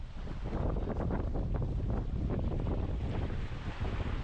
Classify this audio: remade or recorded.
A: remade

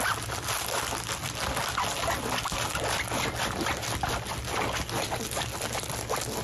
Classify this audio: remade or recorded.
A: recorded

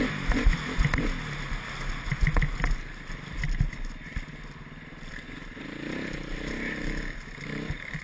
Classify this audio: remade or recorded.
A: recorded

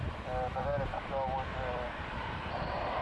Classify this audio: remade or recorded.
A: remade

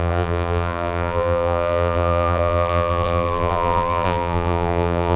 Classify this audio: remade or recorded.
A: remade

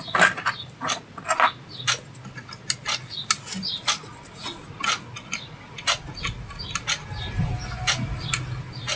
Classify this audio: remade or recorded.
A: recorded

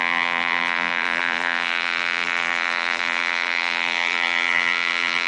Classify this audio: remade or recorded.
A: remade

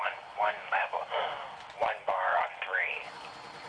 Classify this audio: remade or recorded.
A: recorded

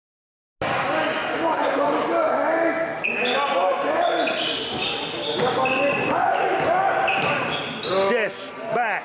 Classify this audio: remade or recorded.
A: recorded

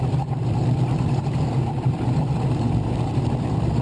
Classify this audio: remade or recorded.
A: remade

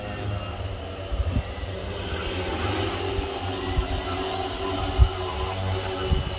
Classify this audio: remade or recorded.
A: recorded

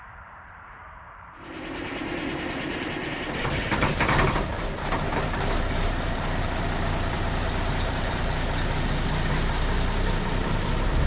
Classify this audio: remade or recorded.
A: remade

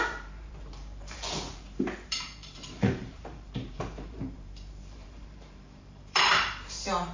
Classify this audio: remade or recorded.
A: remade